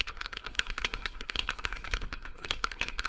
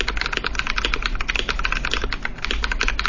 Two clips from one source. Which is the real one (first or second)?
second